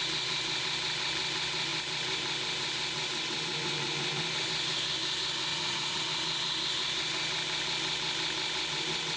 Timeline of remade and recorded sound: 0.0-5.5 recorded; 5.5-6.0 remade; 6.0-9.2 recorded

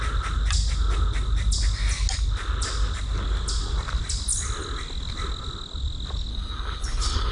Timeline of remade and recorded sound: 0.0-6.3 recorded; 6.3-7.3 remade

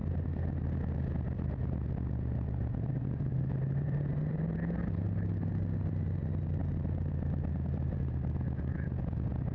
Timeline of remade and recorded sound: 0.0-9.5 recorded

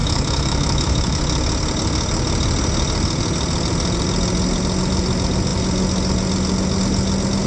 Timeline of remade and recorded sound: 0.0-1.2 remade; 1.2-7.5 recorded

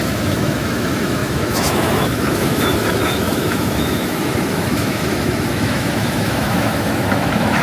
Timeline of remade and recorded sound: 0.0-7.6 remade

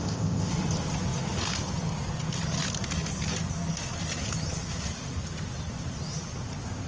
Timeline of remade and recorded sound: 0.0-0.5 remade; 0.5-6.9 recorded

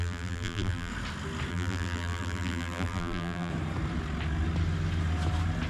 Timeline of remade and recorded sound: 0.0-0.9 remade; 0.9-1.5 recorded; 1.5-3.5 remade; 3.5-5.7 recorded

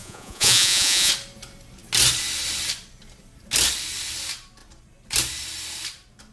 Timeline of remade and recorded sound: 0.0-1.1 remade; 1.1-6.3 recorded